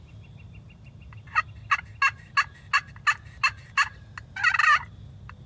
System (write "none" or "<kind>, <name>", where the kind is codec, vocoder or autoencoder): none